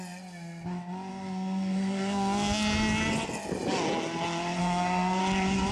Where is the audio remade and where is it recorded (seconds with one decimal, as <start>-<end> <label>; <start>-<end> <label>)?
0.0-1.1 recorded; 1.1-3.1 remade; 3.1-4.6 recorded; 4.6-5.2 remade; 5.2-5.7 recorded